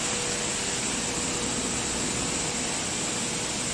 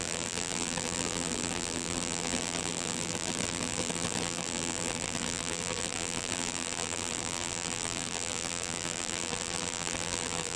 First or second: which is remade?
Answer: second